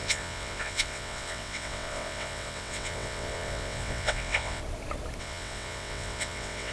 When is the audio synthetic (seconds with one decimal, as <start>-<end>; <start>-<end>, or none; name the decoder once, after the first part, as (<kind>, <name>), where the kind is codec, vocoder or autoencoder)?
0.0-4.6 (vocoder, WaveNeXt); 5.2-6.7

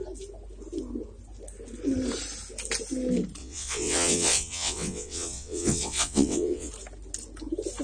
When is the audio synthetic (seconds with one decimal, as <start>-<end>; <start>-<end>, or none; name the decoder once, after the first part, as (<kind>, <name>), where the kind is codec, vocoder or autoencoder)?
3.4-6.7 (vocoder, WaveNeXt)

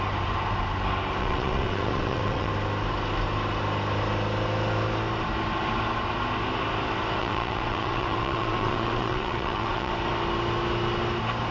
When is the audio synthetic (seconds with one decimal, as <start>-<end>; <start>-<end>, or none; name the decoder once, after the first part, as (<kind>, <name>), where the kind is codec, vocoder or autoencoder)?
1.2-2.5 (vocoder, WaveNeXt); 7.2-9.9